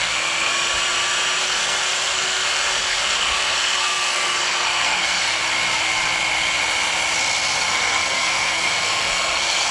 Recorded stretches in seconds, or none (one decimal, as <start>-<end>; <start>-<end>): 0.5-1.4; 5.4-7.6